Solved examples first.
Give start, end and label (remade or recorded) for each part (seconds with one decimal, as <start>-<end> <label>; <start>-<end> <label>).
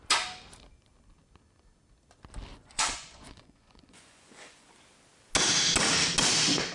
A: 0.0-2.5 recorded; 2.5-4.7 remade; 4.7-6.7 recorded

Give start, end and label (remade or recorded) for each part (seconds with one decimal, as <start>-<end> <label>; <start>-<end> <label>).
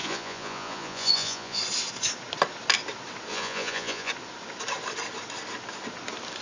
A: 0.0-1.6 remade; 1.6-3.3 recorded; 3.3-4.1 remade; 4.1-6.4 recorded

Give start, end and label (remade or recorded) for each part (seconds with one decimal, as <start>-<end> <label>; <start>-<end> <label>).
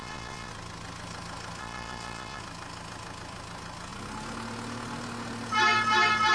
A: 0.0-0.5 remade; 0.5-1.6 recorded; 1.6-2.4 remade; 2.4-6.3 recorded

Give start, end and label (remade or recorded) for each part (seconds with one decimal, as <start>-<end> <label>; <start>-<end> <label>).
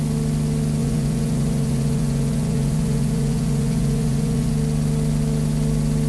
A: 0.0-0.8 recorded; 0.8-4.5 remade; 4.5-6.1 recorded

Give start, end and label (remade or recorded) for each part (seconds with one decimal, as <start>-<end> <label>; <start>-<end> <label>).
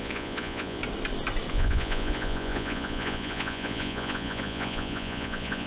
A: 0.0-0.8 remade; 0.8-1.5 recorded; 1.5-5.7 remade